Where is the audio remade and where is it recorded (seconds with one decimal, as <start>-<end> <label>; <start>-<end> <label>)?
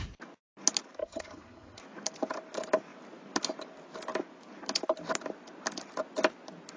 0.0-1.0 recorded; 1.0-1.8 remade; 1.8-6.8 recorded